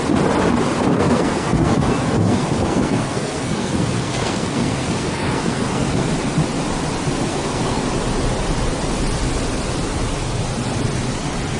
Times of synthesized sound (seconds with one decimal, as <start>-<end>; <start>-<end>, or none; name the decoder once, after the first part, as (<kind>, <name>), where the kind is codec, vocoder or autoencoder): 0.9-6.1 (codec, SNAC); 7.3-7.8